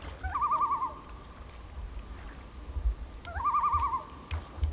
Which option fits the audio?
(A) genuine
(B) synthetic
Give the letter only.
A